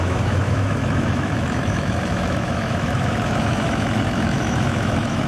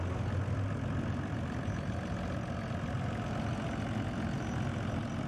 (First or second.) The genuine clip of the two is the second